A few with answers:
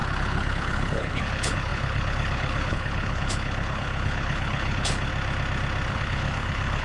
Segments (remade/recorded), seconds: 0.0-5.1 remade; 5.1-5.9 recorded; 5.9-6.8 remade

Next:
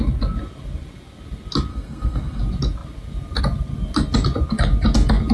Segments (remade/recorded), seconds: 0.0-1.7 recorded; 1.7-2.4 remade; 2.4-5.3 recorded

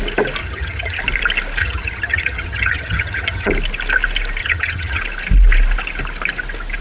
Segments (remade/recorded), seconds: 0.0-0.4 recorded; 0.4-1.0 remade; 1.0-1.6 recorded; 1.6-3.5 remade; 3.5-4.4 recorded; 4.4-5.0 remade; 5.0-6.8 recorded

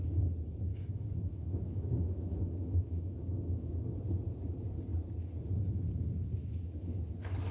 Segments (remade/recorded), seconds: 0.0-0.7 recorded; 0.7-3.7 remade; 3.7-6.4 recorded; 6.4-7.0 remade; 7.0-7.5 recorded

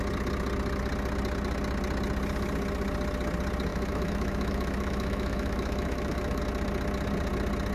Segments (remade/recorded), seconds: 0.0-3.7 recorded; 3.7-6.4 remade; 6.4-7.7 recorded